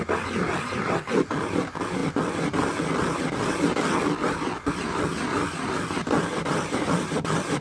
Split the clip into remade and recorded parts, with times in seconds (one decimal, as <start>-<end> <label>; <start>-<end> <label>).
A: 0.0-7.6 recorded